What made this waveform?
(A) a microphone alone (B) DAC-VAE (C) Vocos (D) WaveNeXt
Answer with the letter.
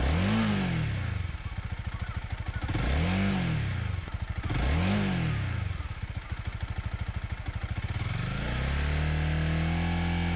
A